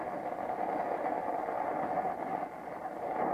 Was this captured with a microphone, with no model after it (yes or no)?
yes